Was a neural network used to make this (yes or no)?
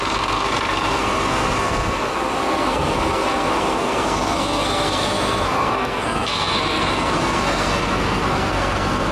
yes